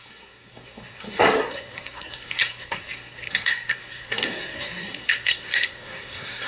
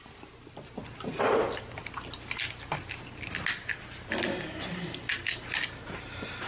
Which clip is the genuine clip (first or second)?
second